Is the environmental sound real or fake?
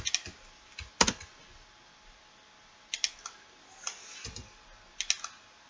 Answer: real